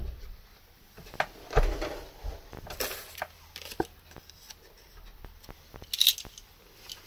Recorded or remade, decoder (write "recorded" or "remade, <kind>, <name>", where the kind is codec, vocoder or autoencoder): recorded